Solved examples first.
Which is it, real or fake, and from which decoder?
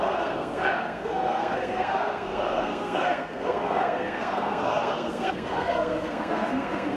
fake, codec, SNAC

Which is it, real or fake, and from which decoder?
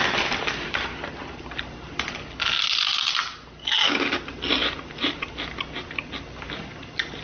real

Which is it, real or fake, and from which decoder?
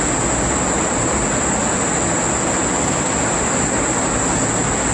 real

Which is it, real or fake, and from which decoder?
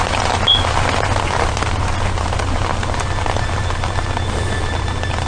real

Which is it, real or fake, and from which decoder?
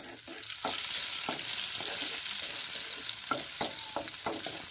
real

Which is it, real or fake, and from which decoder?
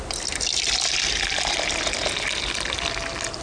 real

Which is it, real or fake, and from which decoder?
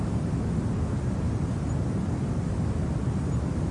real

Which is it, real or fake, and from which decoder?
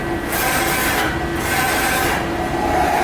real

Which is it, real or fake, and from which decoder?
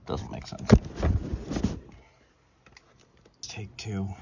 real